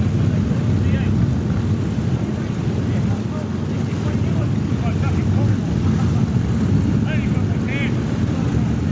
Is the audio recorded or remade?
recorded